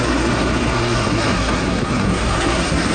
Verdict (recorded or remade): remade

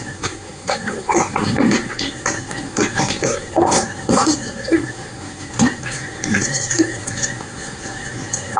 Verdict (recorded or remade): remade